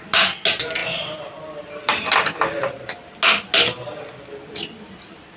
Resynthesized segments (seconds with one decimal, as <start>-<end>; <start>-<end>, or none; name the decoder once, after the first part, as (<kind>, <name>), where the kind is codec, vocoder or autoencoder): none